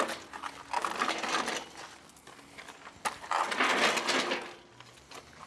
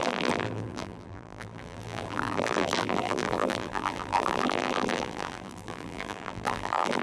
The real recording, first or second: first